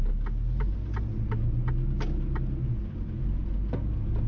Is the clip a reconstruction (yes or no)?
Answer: no